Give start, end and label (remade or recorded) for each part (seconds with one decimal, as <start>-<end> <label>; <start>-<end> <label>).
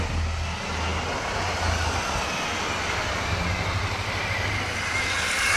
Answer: 0.0-5.6 recorded